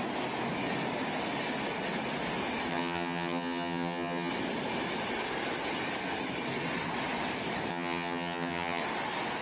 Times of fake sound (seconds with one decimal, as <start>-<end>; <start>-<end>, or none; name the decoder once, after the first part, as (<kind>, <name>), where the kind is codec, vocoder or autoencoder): 2.7-4.3 (vocoder, HiFi-GAN); 7.7-8.8

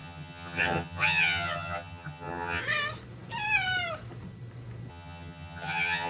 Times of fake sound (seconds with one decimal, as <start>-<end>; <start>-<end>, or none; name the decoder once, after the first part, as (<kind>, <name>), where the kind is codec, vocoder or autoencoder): 0.0-2.6 (vocoder, HiFi-GAN); 4.9-6.1

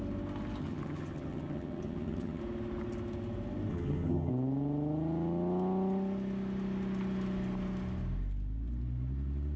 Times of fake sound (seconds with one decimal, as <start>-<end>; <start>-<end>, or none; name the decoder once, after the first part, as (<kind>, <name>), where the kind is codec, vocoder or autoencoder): 0.6-2.4 (vocoder, HiFi-GAN); 3.7-4.3

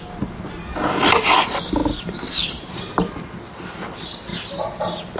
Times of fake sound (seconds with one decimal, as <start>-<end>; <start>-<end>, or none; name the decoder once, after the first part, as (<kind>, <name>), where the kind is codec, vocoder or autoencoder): none